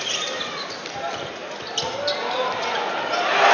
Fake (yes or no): no